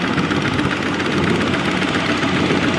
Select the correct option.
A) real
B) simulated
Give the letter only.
A